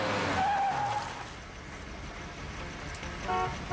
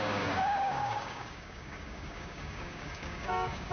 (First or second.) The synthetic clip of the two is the second